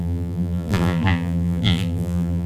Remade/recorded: remade